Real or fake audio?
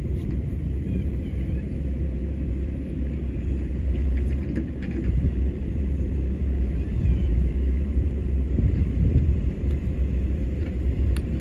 fake